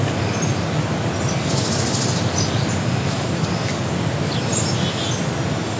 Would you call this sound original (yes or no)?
yes